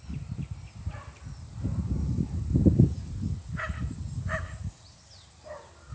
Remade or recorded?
recorded